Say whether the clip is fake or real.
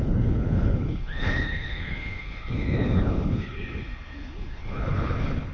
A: fake